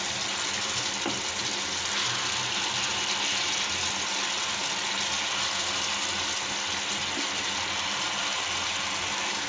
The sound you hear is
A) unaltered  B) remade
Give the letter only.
A